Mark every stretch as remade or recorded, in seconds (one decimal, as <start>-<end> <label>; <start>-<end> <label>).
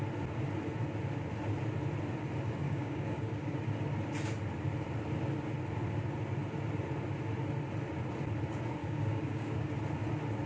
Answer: 0.0-2.6 recorded; 2.6-3.6 remade; 3.6-8.8 recorded; 8.8-9.7 remade; 9.7-10.5 recorded